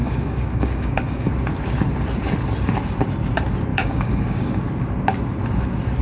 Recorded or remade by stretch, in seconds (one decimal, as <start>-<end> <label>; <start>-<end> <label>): 0.0-1.3 remade; 1.3-3.7 recorded; 3.7-4.6 remade; 4.6-6.0 recorded